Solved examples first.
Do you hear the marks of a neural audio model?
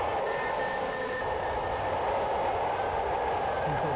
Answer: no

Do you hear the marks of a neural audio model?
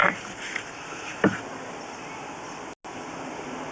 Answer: no